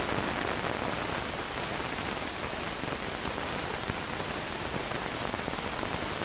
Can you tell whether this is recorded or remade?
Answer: recorded